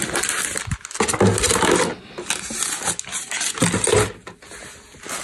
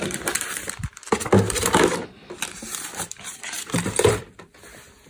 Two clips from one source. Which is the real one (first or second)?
first